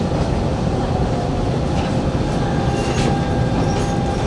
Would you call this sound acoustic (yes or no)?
yes